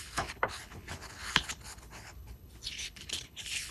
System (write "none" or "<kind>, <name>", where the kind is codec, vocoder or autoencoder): codec, HILCodec